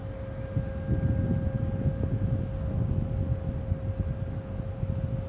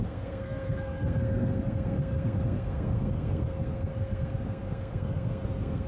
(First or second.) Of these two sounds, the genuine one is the first